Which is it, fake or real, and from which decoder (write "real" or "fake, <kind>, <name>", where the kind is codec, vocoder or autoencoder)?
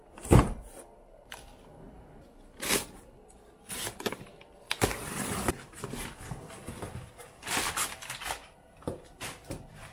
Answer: real